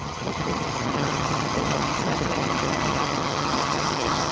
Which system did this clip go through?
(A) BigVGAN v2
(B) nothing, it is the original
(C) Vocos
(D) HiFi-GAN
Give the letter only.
D